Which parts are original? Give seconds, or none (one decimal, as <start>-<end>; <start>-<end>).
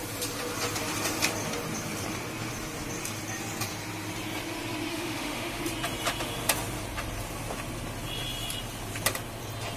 0.0-4.9; 5.6-9.8